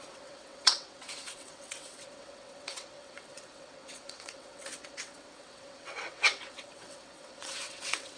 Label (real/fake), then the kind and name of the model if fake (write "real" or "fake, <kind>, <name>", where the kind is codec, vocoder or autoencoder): fake, vocoder, WaveNeXt